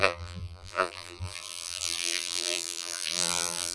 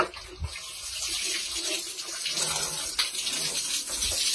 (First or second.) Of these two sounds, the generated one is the first